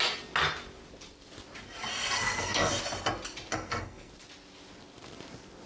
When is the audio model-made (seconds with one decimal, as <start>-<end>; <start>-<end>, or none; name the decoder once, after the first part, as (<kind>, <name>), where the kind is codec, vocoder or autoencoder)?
1.9-2.7 (codec, SNAC); 3.5-4.1